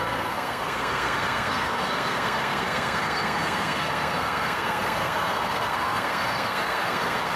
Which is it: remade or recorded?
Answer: remade